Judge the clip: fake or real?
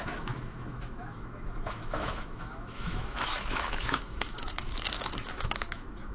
fake